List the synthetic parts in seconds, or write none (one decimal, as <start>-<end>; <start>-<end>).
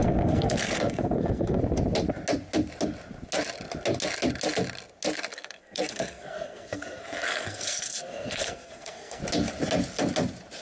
0.0-1.6; 5.3-9.2